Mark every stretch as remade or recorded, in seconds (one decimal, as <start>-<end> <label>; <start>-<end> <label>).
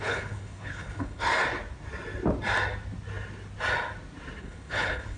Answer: 0.0-1.3 remade; 1.3-4.4 recorded; 4.4-5.2 remade